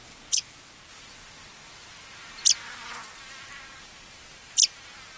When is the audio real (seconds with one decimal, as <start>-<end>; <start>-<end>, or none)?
0.0-5.2